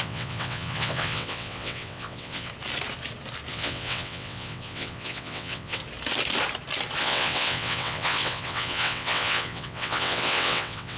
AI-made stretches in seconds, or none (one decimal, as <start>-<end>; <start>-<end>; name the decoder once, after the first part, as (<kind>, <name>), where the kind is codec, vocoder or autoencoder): 0.0-2.5 (vocoder, WaveNeXt); 3.5-5.8; 7.0-11.0